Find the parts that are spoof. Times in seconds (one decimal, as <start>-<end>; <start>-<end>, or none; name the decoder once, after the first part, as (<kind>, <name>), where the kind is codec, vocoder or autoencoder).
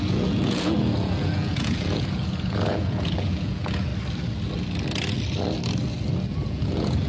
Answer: 0.0-3.9 (vocoder, Vocos); 6.3-7.1